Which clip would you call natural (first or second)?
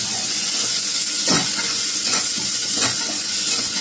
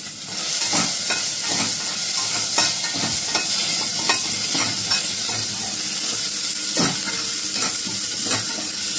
second